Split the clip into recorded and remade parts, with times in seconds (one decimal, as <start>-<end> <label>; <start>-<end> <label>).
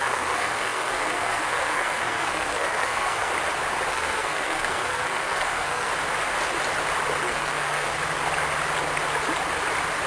0.0-3.3 remade; 3.3-3.9 recorded; 3.9-5.9 remade; 5.9-7.2 recorded; 7.2-7.9 remade; 7.9-10.1 recorded